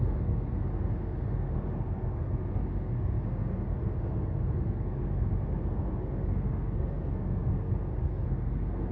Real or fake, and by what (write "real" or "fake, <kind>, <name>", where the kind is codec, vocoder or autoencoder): fake, codec, SNAC